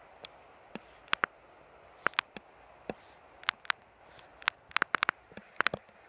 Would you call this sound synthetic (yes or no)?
no